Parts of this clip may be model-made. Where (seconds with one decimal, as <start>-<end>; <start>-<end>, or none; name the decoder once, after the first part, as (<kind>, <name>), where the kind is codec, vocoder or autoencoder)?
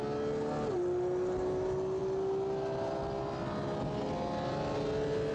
none